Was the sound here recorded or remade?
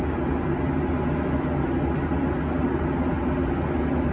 recorded